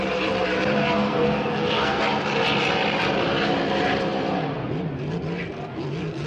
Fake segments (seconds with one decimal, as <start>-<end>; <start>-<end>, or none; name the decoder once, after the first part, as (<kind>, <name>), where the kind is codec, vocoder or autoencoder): 0.8-2.0 (codec, SNAC)